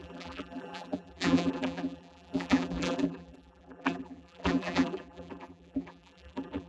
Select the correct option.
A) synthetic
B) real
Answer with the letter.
A